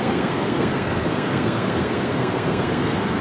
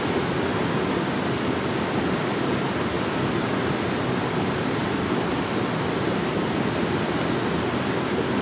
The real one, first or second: second